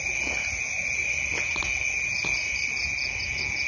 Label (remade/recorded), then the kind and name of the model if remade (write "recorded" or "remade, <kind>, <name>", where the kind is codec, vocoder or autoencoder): recorded